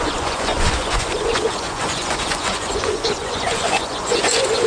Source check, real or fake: fake